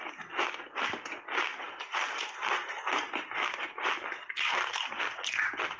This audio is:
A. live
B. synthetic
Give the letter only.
A